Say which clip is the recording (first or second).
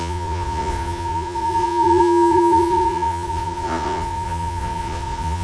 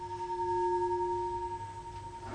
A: second